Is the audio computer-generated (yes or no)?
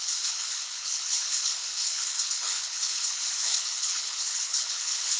yes